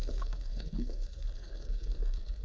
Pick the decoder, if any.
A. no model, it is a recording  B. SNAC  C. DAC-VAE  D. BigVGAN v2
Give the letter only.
B